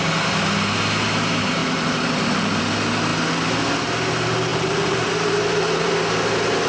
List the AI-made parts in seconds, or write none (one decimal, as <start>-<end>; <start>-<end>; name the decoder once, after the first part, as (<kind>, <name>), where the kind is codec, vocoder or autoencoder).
1.6-2.6 (vocoder, BigVGAN v2); 4.5-5.9